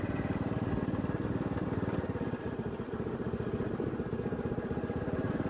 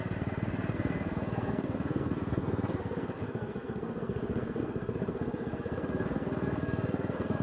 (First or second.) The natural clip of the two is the first